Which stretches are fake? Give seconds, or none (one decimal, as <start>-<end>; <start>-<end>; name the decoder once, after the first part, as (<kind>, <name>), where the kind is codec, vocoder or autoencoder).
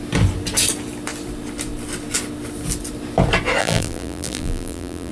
3.6-5.1 (vocoder, BigVGAN v2)